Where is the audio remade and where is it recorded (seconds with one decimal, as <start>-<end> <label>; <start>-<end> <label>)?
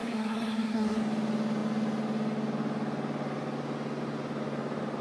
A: 0.0-1.0 remade; 1.0-5.0 recorded